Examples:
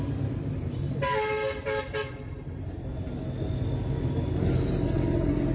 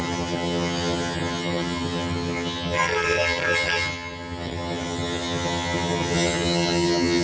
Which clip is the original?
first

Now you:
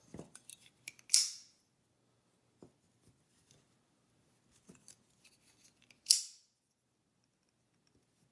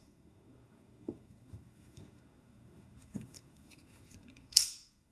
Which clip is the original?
first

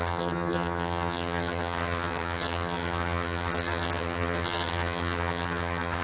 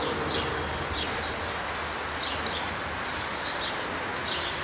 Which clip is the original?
second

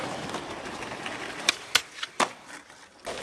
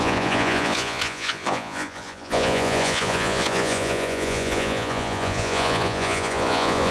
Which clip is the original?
first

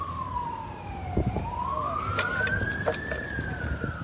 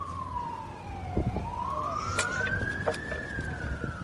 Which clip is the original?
second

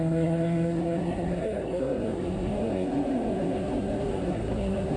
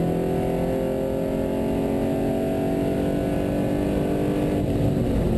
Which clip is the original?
second